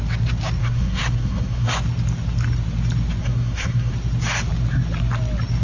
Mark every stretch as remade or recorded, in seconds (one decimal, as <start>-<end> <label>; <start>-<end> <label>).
0.0-0.6 recorded; 0.6-1.7 remade; 1.7-3.2 recorded; 3.2-3.9 remade; 3.9-5.6 recorded